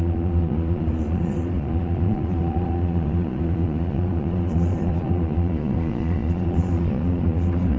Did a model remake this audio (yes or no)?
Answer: yes